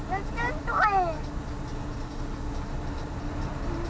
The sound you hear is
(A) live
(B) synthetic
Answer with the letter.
A